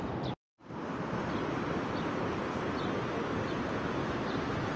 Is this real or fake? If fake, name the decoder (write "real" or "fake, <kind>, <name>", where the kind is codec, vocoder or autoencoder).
real